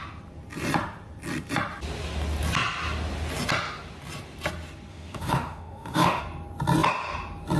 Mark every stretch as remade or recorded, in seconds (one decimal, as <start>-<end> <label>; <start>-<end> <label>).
0.0-4.9 recorded; 4.9-6.2 remade; 6.2-7.6 recorded

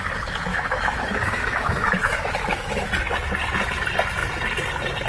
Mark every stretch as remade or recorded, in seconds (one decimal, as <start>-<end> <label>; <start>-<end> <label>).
0.0-0.5 recorded; 0.5-2.9 remade; 2.9-5.1 recorded

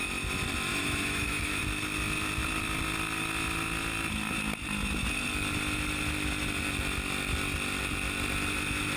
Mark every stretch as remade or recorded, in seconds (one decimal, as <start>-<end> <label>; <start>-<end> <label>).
0.0-0.7 recorded; 0.7-1.6 remade; 1.6-9.0 recorded

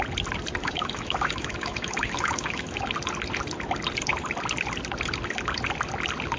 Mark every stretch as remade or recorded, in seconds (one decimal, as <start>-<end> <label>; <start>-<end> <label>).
0.0-0.6 recorded; 0.6-2.8 remade; 2.8-6.4 recorded

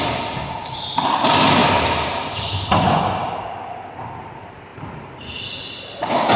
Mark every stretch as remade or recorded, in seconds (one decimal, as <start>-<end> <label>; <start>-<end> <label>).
0.0-6.4 recorded

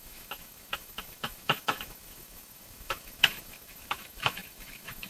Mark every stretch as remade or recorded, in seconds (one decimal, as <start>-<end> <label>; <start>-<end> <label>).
0.0-5.1 remade